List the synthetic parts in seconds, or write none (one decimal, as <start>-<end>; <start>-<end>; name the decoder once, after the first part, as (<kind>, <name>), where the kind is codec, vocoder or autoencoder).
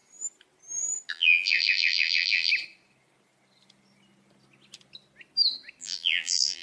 1.1-2.5 (vocoder, BigVGAN v2); 5.8-6.6